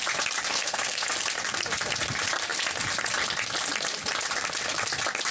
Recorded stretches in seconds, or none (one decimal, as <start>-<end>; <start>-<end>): 0.0-0.5; 1.1-5.3